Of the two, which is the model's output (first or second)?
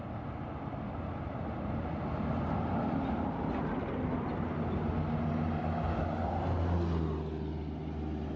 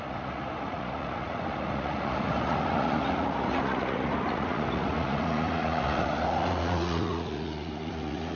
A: second